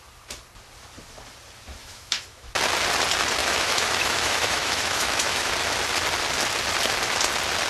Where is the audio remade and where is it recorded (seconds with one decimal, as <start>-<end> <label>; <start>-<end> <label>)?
0.0-1.8 recorded; 1.8-2.5 remade; 2.5-3.4 recorded; 3.4-5.5 remade; 5.5-7.7 recorded